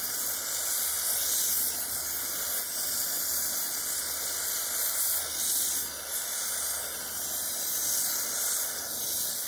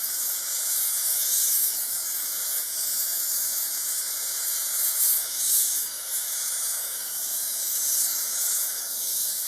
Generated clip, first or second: second